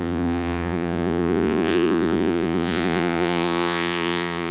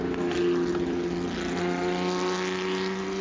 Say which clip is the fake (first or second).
first